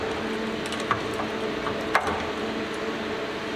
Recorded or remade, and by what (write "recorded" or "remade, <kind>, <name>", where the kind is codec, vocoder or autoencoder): recorded